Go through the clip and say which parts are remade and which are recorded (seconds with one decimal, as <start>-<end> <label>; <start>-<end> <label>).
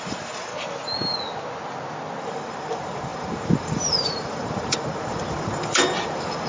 0.0-0.5 remade; 0.5-2.2 recorded; 2.2-6.5 remade